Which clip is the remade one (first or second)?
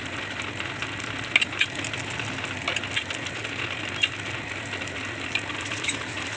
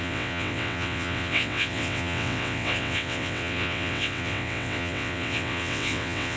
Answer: second